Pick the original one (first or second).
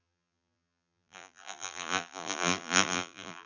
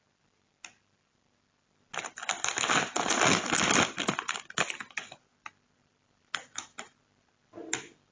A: second